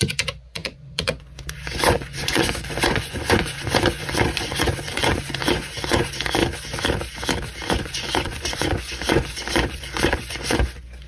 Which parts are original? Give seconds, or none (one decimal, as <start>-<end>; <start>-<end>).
6.4-7.7